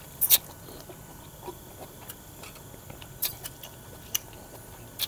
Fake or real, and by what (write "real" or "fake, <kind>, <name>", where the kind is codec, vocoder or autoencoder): real